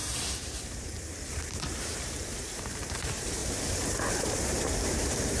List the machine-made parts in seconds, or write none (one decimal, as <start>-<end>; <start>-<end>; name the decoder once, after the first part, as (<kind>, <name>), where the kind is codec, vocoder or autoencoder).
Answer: 0.0-3.4 (vocoder, BigVGAN v2); 4.2-5.4